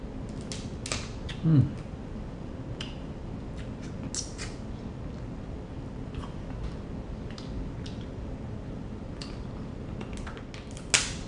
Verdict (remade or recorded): recorded